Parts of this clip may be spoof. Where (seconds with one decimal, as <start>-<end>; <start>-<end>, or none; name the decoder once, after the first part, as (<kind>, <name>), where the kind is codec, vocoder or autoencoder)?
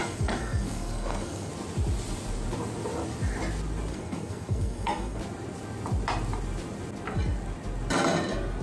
0.0-1.5 (codec, SNAC); 3.9-5.2